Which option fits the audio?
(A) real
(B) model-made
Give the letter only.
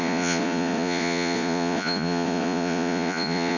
B